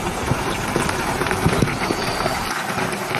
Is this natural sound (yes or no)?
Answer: no